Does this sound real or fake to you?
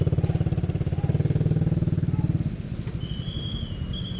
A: real